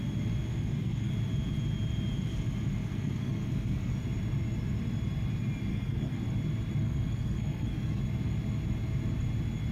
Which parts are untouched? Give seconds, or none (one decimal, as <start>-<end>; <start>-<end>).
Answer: 0.0-0.5; 1.1-2.9; 3.9-5.7; 6.2-6.8; 8.0-9.7